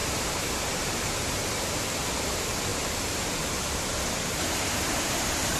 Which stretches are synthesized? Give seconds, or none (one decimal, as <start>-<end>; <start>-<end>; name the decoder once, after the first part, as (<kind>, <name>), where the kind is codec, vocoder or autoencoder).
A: 0.0-5.6 (vocoder, BigVGAN v2)